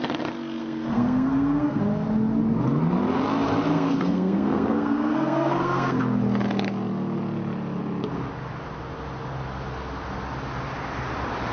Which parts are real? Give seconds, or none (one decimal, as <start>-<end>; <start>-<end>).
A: 0.0-0.6; 1.8-3.7; 6.0-11.5